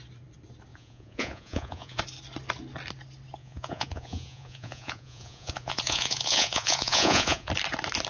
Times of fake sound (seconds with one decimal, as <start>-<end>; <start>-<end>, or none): 0.7-2.0; 3.4-7.5